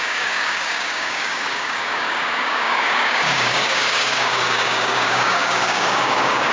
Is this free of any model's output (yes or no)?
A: no